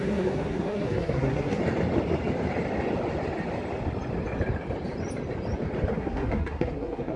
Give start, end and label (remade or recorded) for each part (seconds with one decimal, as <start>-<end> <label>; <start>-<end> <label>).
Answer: 0.0-1.6 remade; 1.6-5.9 recorded; 5.9-7.2 remade